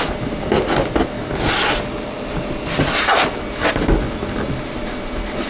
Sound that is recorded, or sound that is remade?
recorded